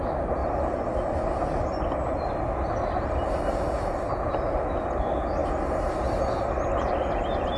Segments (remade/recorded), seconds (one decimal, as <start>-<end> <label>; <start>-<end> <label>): 0.0-7.6 recorded